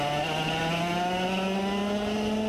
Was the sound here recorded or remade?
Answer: recorded